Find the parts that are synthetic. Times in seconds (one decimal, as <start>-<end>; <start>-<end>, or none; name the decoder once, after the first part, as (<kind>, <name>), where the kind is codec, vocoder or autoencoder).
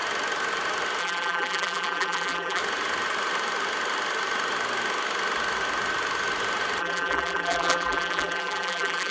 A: 1.0-2.6 (vocoder, BigVGAN v2); 6.8-9.1